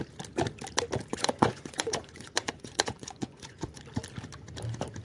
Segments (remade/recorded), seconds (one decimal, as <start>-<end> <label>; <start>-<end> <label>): 0.0-1.1 recorded; 1.1-3.8 remade; 3.8-5.0 recorded